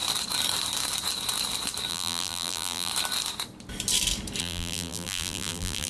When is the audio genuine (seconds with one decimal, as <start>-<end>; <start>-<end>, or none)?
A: 0.0-1.9; 2.9-4.4